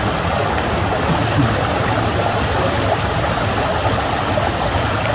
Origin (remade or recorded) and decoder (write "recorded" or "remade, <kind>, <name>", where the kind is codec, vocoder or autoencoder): recorded